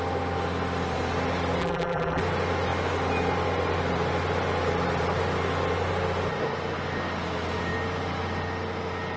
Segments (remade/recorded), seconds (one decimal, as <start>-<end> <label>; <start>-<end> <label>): 0.0-1.6 recorded; 1.6-2.2 remade; 2.2-9.2 recorded